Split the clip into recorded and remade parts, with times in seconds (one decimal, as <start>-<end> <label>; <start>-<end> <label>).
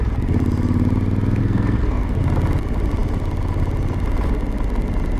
0.0-1.4 recorded; 1.4-2.2 remade; 2.2-5.2 recorded